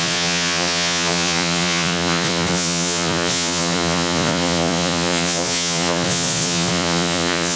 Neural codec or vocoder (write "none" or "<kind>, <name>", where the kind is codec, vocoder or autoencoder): vocoder, Vocos